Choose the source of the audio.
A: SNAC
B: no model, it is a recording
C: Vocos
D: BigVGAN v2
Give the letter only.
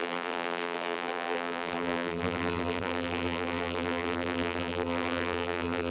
D